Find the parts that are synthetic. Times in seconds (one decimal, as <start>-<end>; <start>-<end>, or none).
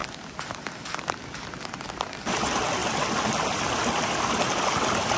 0.0-1.2; 2.8-3.7